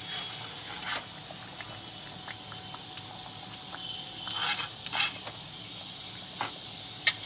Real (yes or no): yes